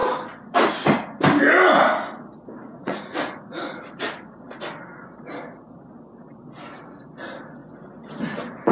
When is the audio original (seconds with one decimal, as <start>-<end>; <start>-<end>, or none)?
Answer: 0.0-2.6; 3.8-8.7